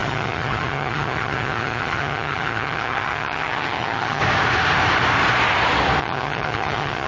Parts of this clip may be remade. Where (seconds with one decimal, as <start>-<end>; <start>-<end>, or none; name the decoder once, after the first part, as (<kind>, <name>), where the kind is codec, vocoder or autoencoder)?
0.0-4.2 (vocoder, HiFi-GAN); 6.0-7.1